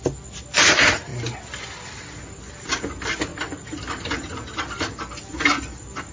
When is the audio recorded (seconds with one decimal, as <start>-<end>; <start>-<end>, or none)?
0.0-6.1